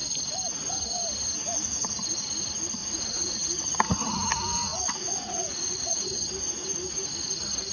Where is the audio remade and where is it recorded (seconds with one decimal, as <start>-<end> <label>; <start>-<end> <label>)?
0.0-2.8 recorded; 2.8-3.4 remade; 3.4-4.7 recorded; 4.7-6.2 remade; 6.2-7.7 recorded